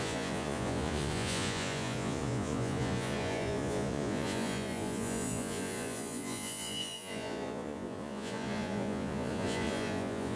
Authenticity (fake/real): fake